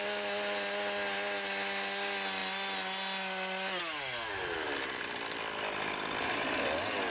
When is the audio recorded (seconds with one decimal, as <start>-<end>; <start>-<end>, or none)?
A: 0.0-7.1